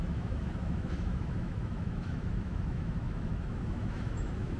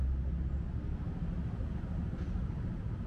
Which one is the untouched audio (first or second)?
second